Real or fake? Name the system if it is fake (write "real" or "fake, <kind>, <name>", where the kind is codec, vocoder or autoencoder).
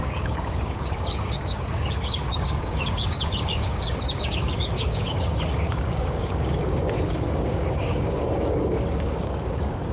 fake, codec, DAC